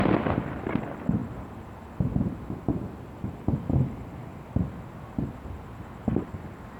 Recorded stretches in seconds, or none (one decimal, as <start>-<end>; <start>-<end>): 0.0-6.8